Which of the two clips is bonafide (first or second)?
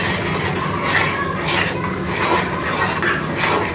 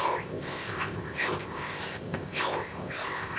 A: first